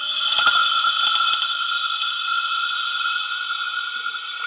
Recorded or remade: recorded